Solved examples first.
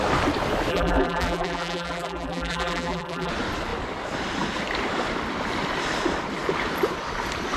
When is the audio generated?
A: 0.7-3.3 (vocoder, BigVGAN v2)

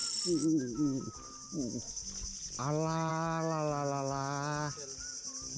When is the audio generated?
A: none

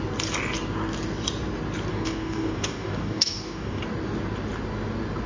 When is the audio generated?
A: 1.9-3.8 (codec, DAC)

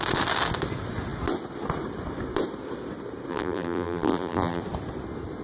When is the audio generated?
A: 3.3-4.6 (vocoder, BigVGAN v2)

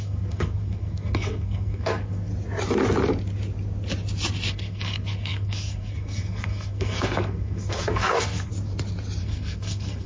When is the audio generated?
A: 0.0-2.3 (codec, SNAC); 4.5-8.5; 9.2-10.1

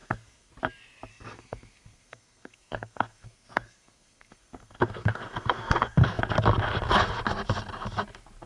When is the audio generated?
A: 0.0-0.5 (codec, SNAC); 1.1-6.2

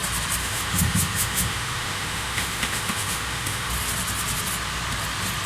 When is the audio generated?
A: 0.4-3.7 (autoencoder, DAC-VAE)

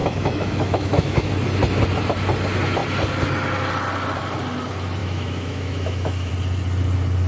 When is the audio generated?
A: 0.0-1.3 (autoencoder, DAC-VAE); 5.0-6.3